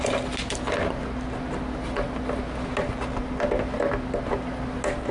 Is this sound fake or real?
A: real